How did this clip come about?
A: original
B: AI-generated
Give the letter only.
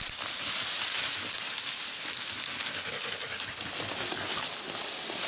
A